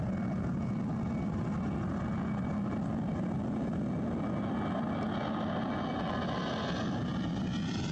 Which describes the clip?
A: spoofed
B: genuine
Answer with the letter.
B